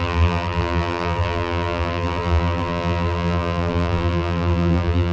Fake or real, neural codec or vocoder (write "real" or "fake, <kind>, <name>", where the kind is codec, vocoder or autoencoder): fake, vocoder, BigVGAN v2